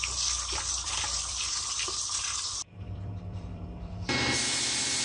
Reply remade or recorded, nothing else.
remade